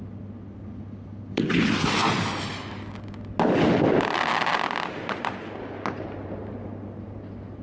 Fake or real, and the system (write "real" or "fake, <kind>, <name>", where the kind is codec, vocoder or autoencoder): real